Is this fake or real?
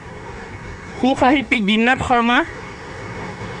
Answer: fake